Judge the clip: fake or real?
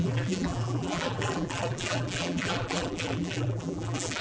fake